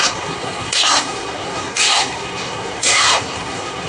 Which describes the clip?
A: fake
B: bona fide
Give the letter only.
A